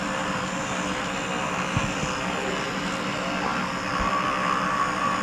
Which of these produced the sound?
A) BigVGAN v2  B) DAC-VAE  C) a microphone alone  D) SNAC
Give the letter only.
C